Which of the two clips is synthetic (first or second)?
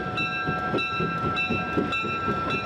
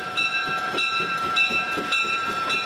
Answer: second